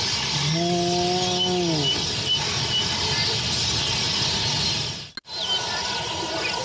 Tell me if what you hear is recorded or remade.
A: recorded